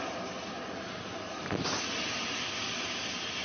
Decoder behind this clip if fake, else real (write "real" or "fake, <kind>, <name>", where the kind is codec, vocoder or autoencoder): real